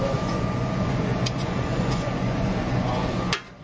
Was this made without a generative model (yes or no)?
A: no